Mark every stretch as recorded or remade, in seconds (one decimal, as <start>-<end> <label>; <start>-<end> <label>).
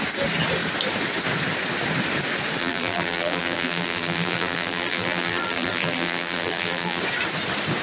0.0-2.6 recorded; 2.6-7.0 remade; 7.0-7.8 recorded